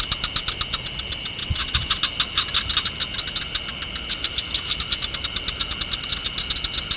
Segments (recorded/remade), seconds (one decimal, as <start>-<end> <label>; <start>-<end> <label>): 0.0-1.4 recorded; 1.4-2.0 remade; 2.0-7.0 recorded